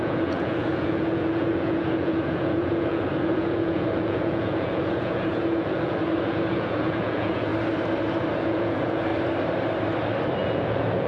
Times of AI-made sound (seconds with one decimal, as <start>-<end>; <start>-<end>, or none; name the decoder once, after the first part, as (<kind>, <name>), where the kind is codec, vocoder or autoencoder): 0.0-7.5 (vocoder, Vocos); 8.3-9.1; 10.4-11.1